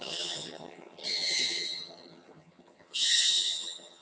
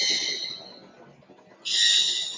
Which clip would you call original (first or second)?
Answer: second